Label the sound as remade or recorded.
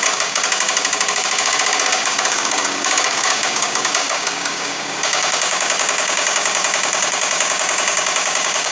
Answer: remade